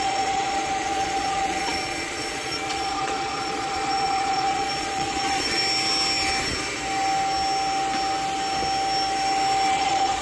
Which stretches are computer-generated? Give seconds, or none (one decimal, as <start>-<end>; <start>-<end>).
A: 0.0-5.6; 9.7-10.2